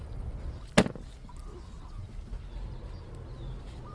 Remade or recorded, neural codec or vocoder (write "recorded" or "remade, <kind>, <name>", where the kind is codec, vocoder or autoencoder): recorded